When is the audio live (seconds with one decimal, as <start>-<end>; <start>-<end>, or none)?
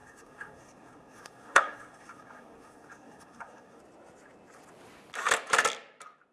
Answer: 3.8-6.3